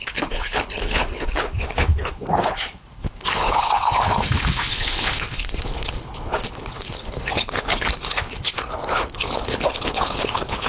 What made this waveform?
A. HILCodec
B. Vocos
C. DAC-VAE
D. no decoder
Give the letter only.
A